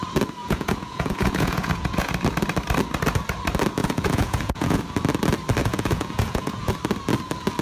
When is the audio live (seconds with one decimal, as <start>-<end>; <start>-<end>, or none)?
0.0-0.4; 2.1-3.8; 4.8-5.6; 6.7-7.6